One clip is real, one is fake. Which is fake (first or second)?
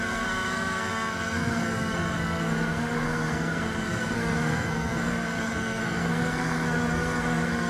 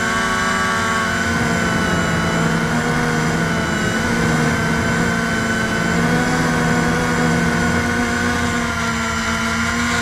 first